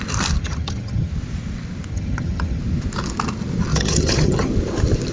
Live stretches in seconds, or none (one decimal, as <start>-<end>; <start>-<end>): 0.0-0.4; 1.1-1.9; 2.6-3.7; 4.5-5.1